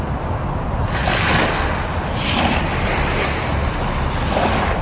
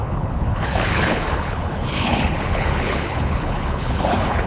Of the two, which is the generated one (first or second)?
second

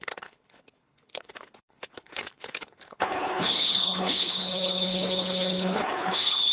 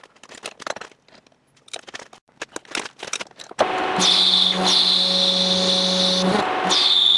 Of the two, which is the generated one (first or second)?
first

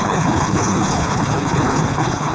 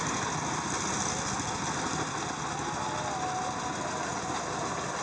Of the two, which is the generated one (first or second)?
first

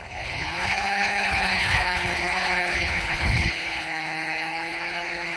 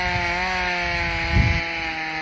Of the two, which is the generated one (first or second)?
first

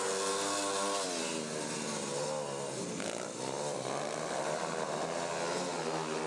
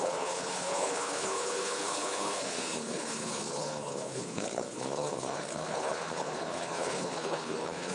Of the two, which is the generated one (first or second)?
second